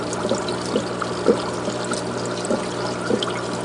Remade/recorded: recorded